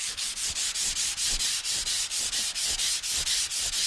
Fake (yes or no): no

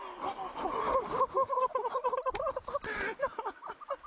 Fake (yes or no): no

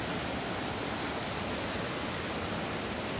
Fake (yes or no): no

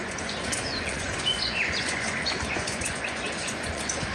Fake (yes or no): yes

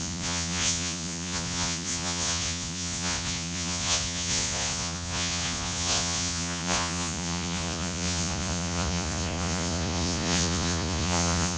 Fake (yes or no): yes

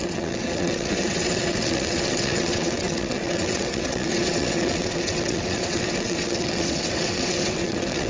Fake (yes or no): yes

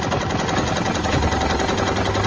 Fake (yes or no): no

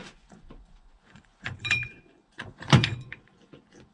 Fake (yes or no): yes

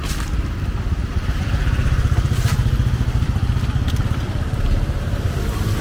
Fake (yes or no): yes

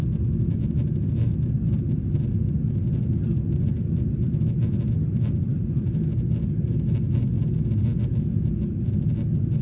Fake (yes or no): no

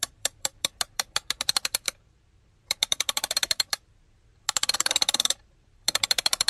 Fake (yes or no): yes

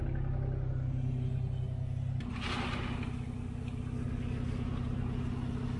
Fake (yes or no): no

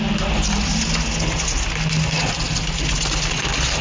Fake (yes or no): no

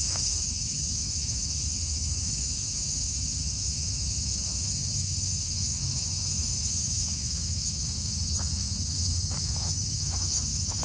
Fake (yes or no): yes